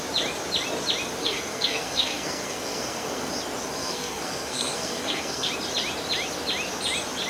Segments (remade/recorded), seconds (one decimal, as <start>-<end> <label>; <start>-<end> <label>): 0.0-1.2 recorded; 1.2-3.3 remade; 3.3-3.8 recorded; 3.8-5.5 remade; 5.5-7.3 recorded